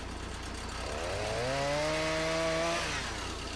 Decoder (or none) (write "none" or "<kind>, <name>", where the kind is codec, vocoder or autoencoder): none